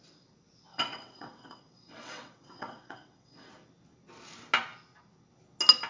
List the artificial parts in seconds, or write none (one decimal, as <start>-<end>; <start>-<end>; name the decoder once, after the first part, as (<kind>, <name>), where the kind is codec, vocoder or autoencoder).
0.7-3.5 (vocoder, WaveNeXt)

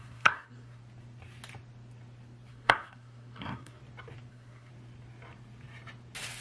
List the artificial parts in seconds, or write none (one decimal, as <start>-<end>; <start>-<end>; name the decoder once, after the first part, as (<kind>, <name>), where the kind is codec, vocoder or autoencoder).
0.0-0.8 (codec, SNAC); 2.5-3.8; 4.3-4.7